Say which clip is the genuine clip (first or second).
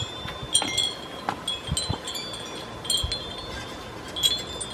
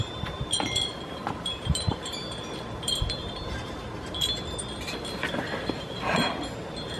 first